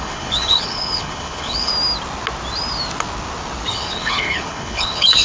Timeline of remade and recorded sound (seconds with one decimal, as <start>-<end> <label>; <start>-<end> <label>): 0.0-1.7 remade; 1.7-3.7 recorded; 3.7-5.2 remade